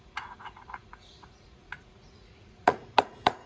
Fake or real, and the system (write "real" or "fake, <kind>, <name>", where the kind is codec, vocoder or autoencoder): fake, vocoder, Vocos